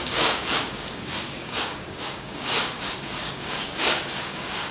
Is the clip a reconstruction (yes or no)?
yes